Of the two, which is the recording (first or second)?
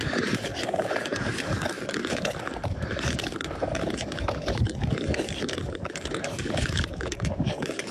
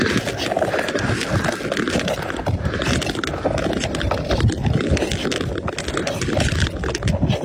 second